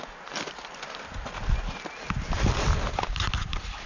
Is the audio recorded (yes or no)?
yes